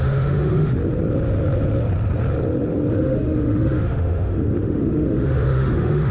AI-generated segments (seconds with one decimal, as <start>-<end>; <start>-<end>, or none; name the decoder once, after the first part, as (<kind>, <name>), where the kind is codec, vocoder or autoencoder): 0.0-0.8 (autoencoder, DAC-VAE); 2.9-6.1